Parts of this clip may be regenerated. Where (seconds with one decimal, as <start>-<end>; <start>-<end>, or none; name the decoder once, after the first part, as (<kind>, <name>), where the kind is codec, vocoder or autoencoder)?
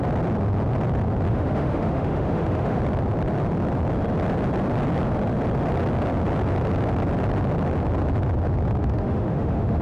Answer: 1.3-2.8 (autoencoder, DAC-VAE); 8.8-9.8